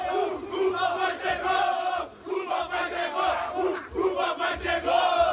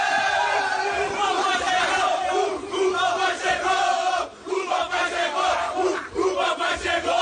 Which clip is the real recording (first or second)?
first